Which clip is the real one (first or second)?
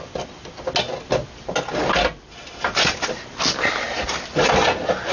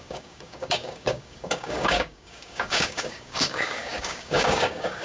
first